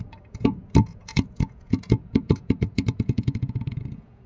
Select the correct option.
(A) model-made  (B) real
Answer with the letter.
A